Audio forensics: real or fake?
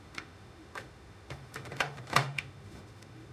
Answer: fake